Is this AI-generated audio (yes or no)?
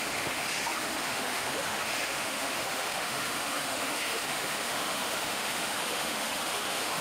yes